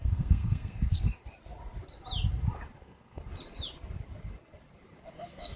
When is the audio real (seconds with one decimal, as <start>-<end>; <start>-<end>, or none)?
1.2-2.8; 3.2-5.1